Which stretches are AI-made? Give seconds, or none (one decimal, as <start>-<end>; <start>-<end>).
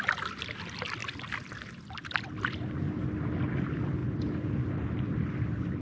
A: none